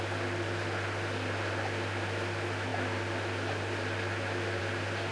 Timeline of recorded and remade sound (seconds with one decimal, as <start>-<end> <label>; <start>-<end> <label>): 0.0-5.1 recorded